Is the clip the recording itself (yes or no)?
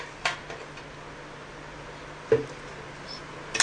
yes